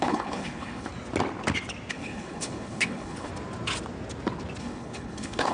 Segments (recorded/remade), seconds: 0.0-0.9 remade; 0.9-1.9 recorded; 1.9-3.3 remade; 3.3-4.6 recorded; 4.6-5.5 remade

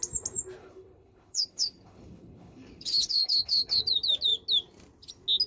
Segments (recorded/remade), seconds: 0.0-0.6 recorded; 0.6-3.8 remade; 3.8-5.5 recorded

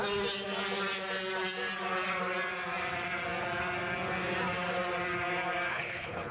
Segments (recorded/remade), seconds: 0.0-5.7 recorded; 5.7-6.3 remade